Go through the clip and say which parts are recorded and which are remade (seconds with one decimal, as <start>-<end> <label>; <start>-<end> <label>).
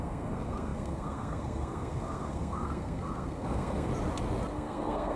0.0-3.9 remade; 3.9-4.5 recorded; 4.5-5.2 remade